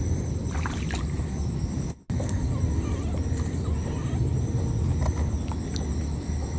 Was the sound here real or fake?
real